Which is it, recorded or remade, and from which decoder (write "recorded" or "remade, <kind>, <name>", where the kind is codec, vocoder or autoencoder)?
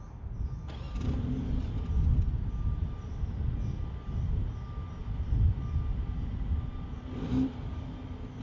recorded